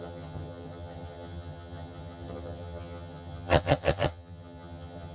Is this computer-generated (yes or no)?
yes